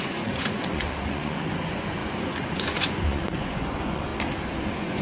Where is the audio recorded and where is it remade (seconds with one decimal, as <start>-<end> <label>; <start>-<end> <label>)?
0.0-4.1 remade; 4.1-4.6 recorded; 4.6-5.0 remade